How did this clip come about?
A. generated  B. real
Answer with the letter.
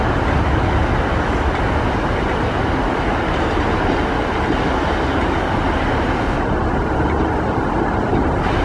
B